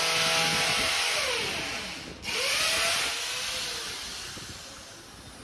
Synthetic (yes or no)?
no